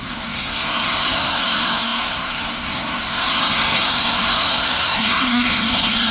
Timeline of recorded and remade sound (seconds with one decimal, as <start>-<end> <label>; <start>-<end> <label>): 0.0-6.1 remade